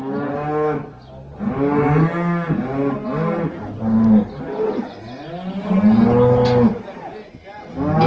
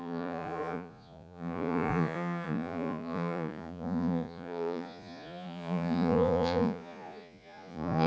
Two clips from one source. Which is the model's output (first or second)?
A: second